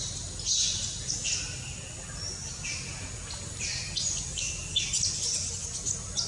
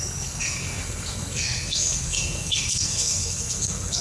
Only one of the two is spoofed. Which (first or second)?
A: second